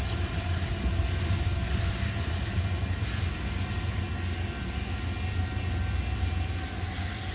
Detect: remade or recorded recorded